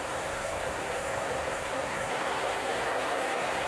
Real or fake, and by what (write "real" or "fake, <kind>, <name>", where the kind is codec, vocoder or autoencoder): fake, codec, SNAC